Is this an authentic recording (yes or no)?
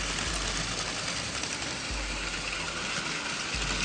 yes